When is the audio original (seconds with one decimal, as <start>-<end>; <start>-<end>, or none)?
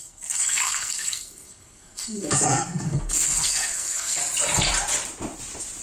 4.2-5.8